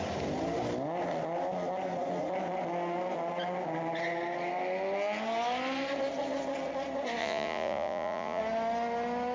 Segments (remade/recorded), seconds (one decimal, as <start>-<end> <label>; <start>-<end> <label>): 0.0-7.2 recorded; 7.2-8.4 remade; 8.4-9.3 recorded